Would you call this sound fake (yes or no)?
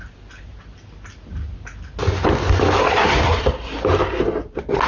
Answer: no